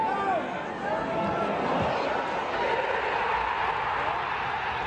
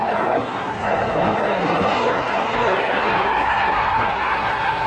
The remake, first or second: second